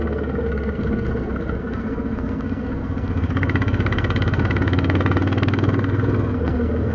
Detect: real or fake fake